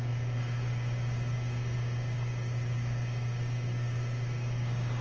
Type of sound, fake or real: fake